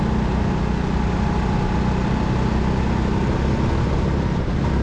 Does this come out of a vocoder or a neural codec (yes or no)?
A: no